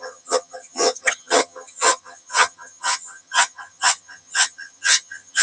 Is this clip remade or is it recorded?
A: remade